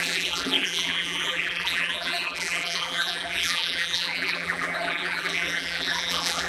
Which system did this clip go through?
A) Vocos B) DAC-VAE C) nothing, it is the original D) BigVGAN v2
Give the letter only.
D